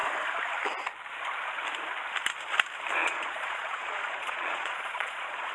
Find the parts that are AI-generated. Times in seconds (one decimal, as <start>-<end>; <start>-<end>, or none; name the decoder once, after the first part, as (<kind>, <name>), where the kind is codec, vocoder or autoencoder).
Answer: 3.0-5.5 (vocoder, Vocos)